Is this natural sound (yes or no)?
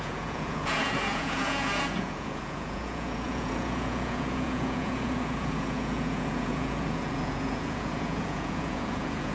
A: no